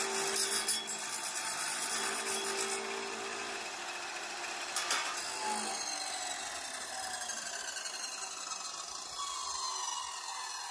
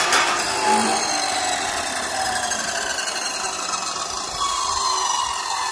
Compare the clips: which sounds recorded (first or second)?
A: first